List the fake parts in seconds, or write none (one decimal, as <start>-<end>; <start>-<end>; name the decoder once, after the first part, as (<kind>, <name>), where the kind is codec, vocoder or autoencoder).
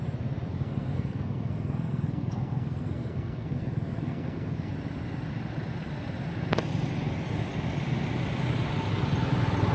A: 0.5-4.7 (codec, SNAC)